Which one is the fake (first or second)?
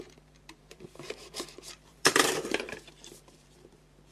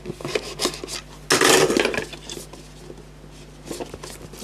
first